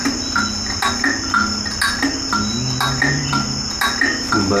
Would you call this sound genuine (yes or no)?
yes